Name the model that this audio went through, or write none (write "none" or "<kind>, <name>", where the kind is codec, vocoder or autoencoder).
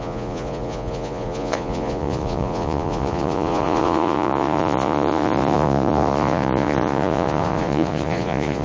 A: vocoder, Vocos